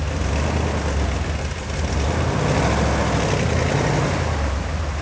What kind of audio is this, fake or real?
real